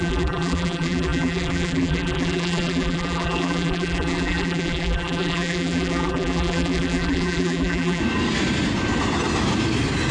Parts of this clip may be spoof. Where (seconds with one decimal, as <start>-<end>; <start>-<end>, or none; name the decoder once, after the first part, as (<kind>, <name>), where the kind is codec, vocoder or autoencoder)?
0.0-8.0 (vocoder, BigVGAN v2)